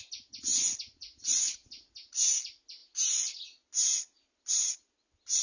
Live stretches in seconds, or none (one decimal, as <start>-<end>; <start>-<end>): 0.0-5.4